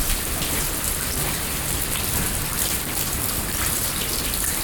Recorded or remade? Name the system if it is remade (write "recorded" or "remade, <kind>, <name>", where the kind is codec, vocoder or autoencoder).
remade, vocoder, BigVGAN v2